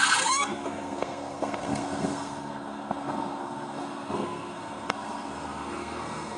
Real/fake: fake